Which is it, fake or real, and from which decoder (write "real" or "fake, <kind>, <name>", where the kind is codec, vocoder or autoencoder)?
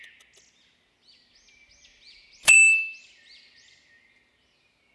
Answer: real